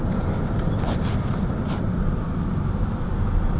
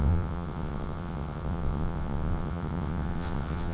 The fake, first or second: second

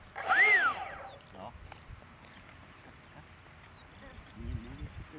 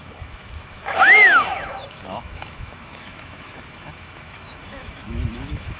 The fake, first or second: second